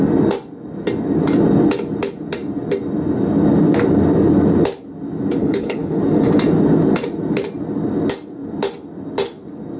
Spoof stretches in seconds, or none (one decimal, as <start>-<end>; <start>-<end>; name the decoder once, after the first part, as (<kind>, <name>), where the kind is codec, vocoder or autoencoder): 5.4-6.0 (codec, HILCodec)